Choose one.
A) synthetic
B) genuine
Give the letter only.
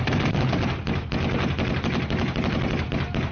B